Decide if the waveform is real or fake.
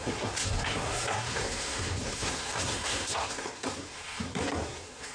fake